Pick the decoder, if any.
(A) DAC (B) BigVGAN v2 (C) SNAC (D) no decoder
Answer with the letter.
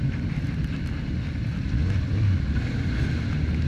D